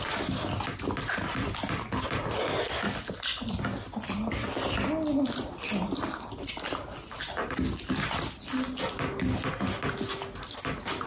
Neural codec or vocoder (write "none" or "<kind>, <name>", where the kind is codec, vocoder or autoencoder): none